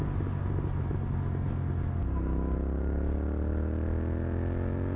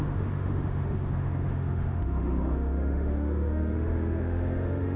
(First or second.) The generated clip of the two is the second